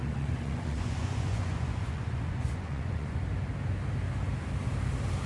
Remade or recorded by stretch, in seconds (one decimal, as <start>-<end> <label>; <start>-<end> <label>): 0.0-3.2 remade; 3.2-5.3 recorded